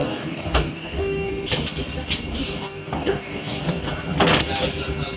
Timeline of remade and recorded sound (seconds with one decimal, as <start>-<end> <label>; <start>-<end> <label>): 0.0-1.3 remade; 1.3-2.3 recorded; 2.3-3.9 remade; 3.9-5.2 recorded